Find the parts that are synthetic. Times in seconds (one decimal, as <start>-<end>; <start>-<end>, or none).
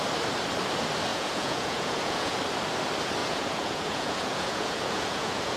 1.1-2.4; 3.2-5.6